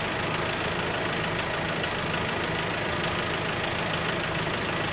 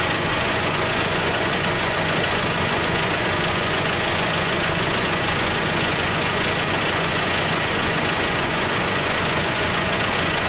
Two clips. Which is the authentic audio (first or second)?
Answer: first